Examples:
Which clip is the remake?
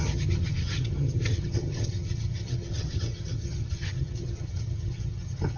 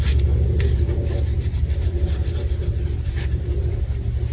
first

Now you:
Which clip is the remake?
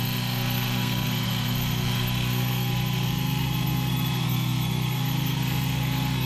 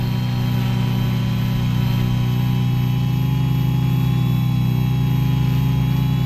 first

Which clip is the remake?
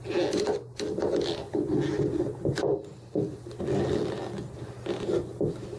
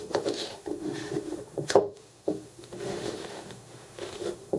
second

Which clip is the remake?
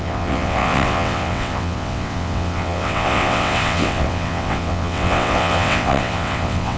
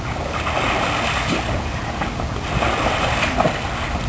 first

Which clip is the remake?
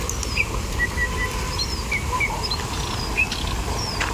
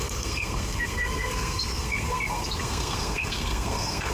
second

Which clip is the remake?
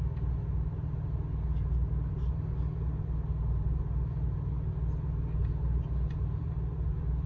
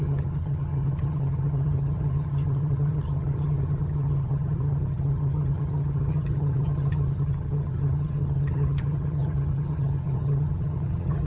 second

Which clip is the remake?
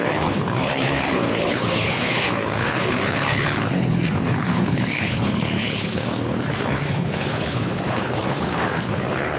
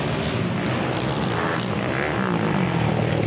first